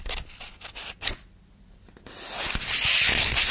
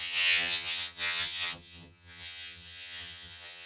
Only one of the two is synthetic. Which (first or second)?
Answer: second